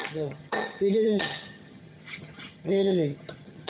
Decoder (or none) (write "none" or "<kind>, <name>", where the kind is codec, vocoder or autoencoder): vocoder, HiFi-GAN